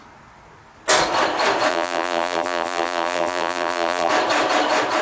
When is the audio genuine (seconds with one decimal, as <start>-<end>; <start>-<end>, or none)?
0.0-1.7; 4.1-5.0